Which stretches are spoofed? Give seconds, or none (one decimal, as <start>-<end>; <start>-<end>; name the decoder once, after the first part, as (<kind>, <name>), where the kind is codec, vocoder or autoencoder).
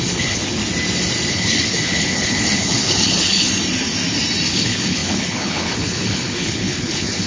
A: 0.0-0.6 (codec, HILCodec); 1.3-3.5; 4.5-7.3